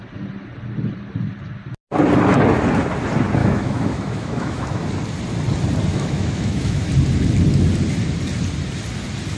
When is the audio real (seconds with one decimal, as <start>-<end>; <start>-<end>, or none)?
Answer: 0.0-3.4; 4.9-5.9; 6.9-9.4